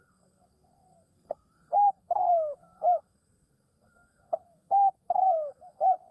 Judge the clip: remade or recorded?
remade